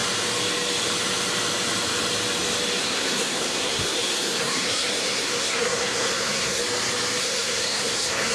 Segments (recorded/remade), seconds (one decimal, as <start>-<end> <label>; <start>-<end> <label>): 0.0-2.8 recorded; 2.8-6.6 remade; 6.6-7.2 recorded; 7.2-8.3 remade